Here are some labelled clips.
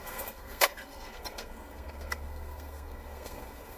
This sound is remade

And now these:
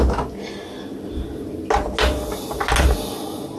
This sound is recorded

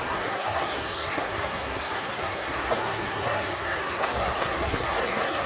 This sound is remade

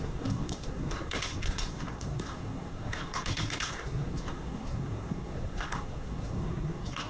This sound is remade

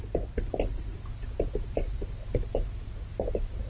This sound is recorded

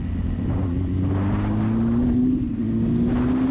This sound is recorded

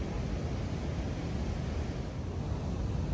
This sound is recorded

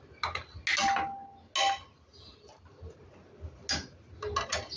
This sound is recorded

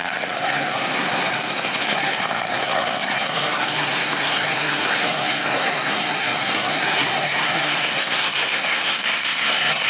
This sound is remade